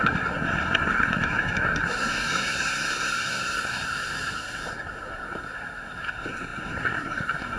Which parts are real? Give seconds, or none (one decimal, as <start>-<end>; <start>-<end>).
none